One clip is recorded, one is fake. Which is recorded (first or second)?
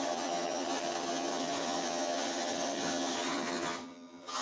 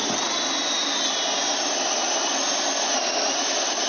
second